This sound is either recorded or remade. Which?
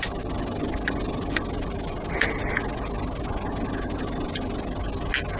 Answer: recorded